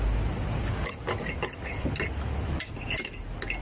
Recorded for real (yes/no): yes